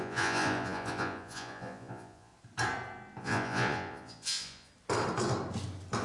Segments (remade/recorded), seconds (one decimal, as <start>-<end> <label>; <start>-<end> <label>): 0.0-2.3 remade; 2.3-3.2 recorded; 3.2-4.7 remade; 4.7-6.0 recorded